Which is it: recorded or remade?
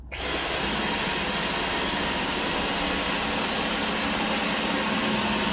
recorded